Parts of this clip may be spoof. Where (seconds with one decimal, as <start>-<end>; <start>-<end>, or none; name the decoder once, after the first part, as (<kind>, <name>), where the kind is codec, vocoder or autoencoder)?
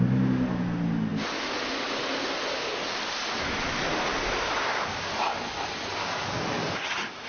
none